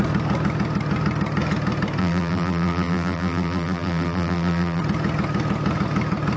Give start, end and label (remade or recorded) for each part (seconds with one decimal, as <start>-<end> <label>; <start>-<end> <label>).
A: 0.0-2.0 recorded; 2.0-4.8 remade; 4.8-6.4 recorded